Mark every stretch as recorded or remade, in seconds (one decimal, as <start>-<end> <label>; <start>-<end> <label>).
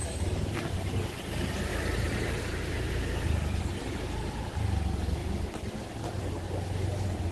0.0-7.3 recorded